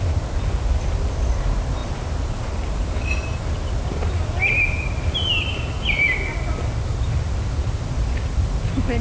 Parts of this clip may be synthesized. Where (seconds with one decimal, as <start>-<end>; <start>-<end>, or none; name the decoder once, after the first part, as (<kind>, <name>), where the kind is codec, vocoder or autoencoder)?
none